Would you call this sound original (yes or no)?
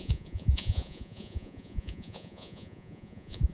no